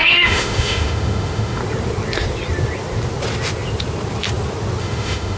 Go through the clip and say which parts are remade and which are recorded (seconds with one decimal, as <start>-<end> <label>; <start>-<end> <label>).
0.0-1.6 remade; 1.6-4.8 recorded; 4.8-5.4 remade